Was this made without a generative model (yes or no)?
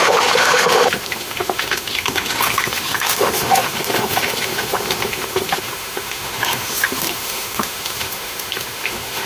no